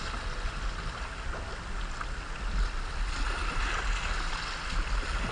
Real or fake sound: real